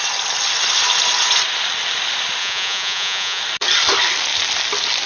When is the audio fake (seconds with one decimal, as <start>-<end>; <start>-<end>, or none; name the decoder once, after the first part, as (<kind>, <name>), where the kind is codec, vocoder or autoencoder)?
2.4-3.4 (vocoder, Vocos)